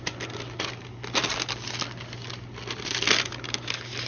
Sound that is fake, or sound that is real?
real